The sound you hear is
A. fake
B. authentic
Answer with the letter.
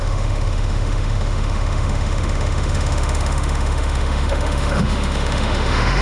A